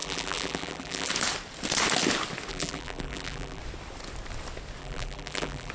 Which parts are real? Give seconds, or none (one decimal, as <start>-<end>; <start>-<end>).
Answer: 1.1-2.5; 3.6-4.8